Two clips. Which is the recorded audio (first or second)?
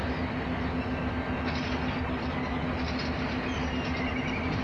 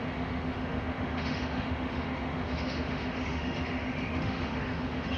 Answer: first